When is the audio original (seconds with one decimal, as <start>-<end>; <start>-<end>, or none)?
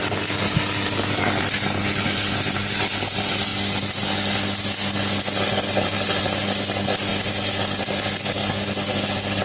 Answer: 0.0-9.4